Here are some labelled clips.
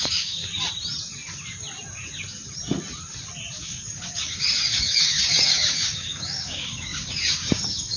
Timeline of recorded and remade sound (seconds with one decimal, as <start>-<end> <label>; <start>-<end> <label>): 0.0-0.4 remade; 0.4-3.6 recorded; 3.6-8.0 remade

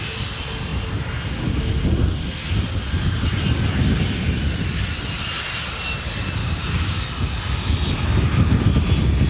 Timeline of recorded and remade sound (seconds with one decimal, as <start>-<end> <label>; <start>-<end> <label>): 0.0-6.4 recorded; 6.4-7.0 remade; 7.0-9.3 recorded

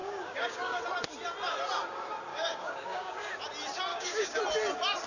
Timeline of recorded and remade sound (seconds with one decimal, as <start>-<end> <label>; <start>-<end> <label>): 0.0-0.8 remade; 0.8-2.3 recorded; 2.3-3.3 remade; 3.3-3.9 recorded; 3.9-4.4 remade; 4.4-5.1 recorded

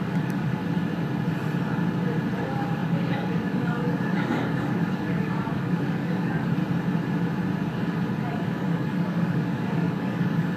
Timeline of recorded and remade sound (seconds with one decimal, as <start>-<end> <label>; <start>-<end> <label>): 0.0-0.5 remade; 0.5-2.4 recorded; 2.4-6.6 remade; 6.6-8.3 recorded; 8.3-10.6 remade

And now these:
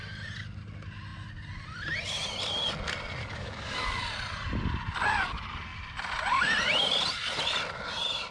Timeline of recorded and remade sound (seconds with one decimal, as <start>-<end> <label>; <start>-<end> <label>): 0.0-3.2 recorded; 3.2-4.0 remade; 4.0-8.3 recorded